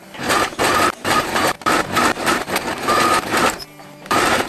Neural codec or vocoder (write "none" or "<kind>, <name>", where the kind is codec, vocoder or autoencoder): vocoder, BigVGAN v2